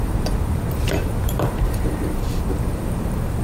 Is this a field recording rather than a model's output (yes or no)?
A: no